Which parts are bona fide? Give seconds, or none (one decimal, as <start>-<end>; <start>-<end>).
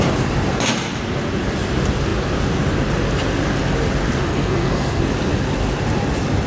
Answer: 0.0-4.3; 5.0-6.5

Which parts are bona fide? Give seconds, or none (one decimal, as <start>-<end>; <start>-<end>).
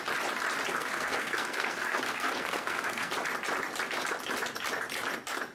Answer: 0.0-0.7; 3.1-5.5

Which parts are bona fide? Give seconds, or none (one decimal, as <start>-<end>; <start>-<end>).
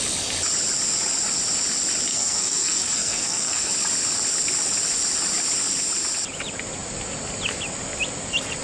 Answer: 0.0-2.1; 3.7-8.6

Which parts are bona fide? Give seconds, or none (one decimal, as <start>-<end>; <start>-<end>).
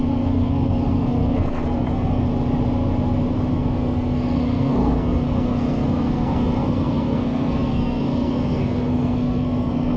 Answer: 2.3-3.5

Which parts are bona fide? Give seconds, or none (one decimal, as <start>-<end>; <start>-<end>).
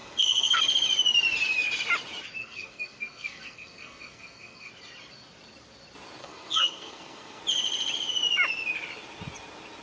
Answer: 0.6-2.4; 4.7-6.2; 7.4-9.8